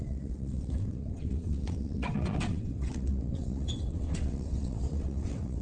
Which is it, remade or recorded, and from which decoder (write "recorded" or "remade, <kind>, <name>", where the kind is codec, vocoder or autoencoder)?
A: remade, vocoder, WaveNeXt